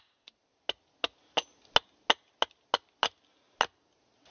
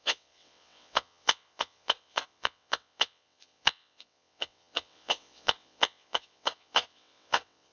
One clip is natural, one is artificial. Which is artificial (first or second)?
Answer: second